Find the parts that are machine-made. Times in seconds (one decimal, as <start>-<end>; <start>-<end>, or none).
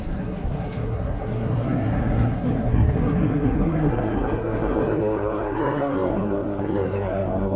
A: 0.0-7.6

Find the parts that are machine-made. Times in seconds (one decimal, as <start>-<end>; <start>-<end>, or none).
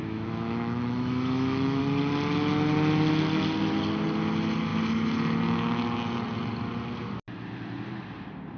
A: 0.0-1.8